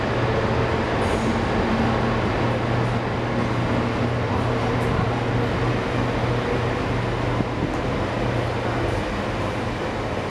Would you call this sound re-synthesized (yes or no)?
no